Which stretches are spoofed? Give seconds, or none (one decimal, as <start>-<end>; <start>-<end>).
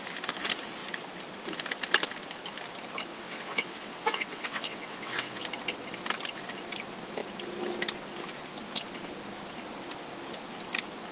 3.1-5.4